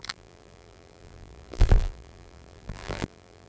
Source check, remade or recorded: remade